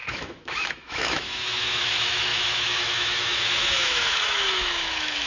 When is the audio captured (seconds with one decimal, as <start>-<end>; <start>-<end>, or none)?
none